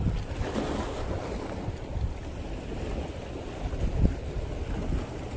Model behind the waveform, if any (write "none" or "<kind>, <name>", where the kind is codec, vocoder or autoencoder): none